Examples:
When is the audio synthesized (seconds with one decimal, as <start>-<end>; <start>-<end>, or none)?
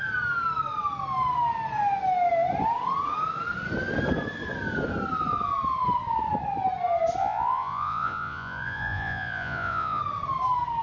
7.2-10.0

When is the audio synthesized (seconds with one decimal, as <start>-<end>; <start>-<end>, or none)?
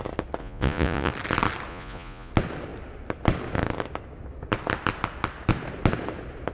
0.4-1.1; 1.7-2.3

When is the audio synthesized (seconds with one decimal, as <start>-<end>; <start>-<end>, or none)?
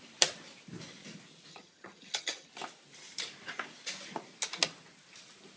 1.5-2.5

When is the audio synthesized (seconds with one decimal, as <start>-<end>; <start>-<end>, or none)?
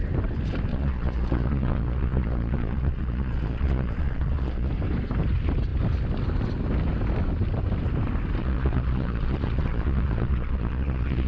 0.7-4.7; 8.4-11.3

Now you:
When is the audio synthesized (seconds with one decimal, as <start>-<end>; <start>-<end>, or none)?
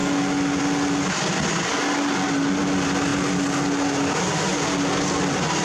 none